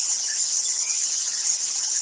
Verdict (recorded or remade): remade